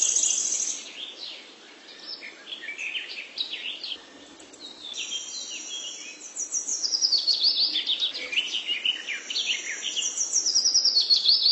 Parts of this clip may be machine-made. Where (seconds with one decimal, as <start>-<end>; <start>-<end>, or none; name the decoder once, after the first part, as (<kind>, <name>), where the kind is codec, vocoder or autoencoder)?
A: 2.4-4.6 (vocoder, BigVGAN v2); 6.7-7.4